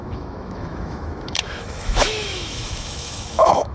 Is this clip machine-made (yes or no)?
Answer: yes